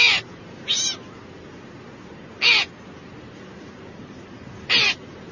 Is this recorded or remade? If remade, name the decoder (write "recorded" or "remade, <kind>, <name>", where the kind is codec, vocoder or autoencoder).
recorded